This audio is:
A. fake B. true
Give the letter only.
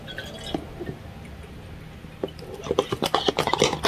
B